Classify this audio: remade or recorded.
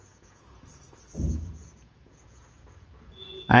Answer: remade